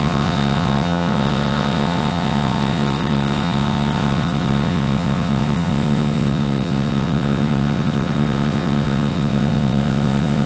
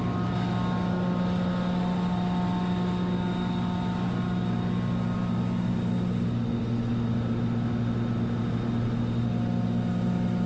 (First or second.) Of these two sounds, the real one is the second